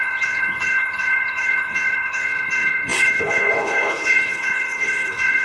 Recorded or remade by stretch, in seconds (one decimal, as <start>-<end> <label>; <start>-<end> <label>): 0.0-5.4 remade